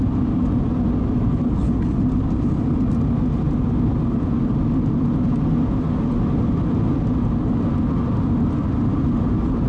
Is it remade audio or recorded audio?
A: recorded